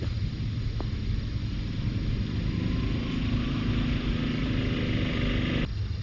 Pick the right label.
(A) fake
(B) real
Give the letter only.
B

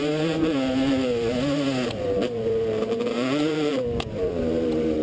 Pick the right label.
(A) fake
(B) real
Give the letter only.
A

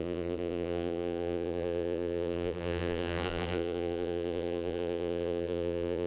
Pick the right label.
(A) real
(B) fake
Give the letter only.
B